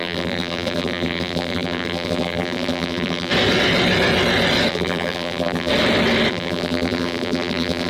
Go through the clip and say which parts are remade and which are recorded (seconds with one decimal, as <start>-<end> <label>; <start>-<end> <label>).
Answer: 0.0-3.3 remade; 3.3-4.7 recorded; 4.7-5.7 remade; 5.7-6.3 recorded; 6.3-7.9 remade